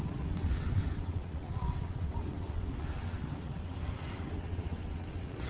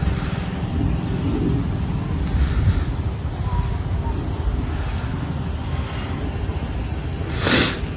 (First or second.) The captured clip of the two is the second